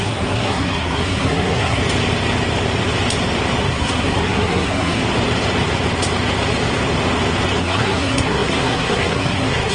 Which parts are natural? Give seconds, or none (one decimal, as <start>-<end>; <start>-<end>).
1.8-3.6; 5.0-7.6